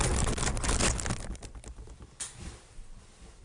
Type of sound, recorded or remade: recorded